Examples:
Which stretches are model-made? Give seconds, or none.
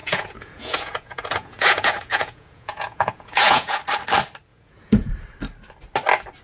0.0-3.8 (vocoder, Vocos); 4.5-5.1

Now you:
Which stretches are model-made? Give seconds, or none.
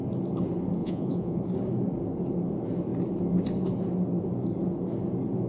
0.8-1.4 (vocoder, Vocos)